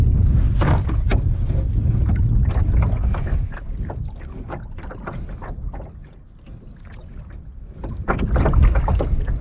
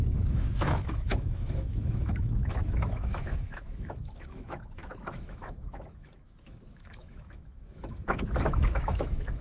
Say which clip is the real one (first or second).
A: first